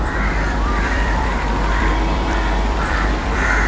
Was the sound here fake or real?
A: fake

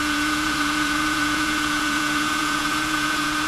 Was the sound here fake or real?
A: fake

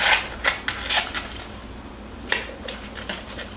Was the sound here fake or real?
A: real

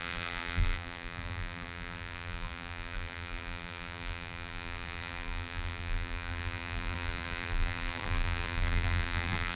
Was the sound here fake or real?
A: fake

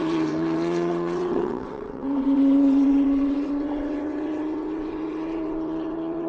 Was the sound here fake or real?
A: fake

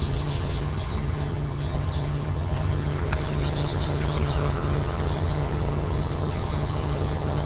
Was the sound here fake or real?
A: fake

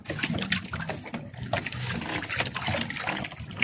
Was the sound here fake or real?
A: real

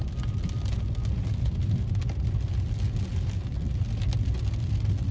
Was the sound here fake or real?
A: real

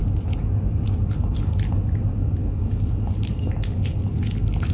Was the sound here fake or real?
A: real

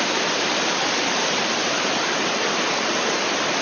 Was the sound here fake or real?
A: fake